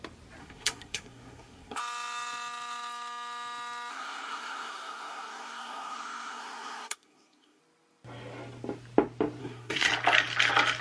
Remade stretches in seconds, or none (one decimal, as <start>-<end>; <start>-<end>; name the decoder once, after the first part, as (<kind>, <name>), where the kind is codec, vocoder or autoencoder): 0.4-1.8 (codec, SNAC); 3.9-7.6; 9.4-9.9